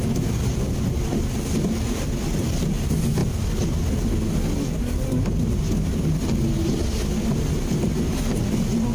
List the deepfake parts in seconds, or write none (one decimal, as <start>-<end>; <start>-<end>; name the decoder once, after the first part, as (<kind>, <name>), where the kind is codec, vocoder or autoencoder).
none